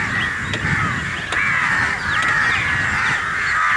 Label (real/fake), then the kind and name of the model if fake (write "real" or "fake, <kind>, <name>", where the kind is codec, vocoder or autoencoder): real